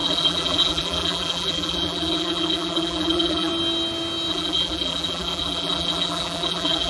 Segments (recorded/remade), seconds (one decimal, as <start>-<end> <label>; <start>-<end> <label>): 0.0-3.5 remade; 3.5-4.3 recorded; 4.3-6.9 remade